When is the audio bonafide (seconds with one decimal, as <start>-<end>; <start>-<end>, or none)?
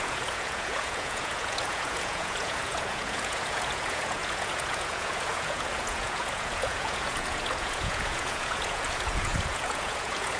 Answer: none